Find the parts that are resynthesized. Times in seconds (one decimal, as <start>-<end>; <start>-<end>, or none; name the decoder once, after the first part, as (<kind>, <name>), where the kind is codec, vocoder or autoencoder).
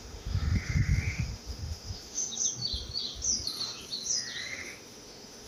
0.0-2.3 (autoencoder, DAC-VAE); 4.4-5.5